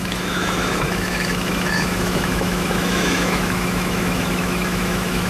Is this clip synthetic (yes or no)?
yes